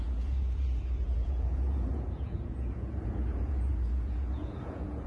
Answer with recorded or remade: remade